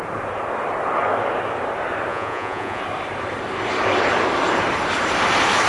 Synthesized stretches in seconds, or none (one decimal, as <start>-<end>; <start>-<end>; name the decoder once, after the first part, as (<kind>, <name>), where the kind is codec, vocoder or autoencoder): 2.1-2.8 (vocoder, Vocos)